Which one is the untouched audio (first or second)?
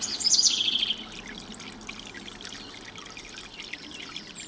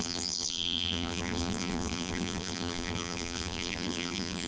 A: first